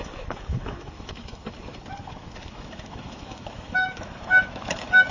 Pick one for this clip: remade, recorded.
remade